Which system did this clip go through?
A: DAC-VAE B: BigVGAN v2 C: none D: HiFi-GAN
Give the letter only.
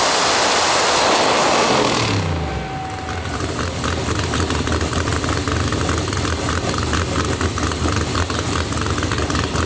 C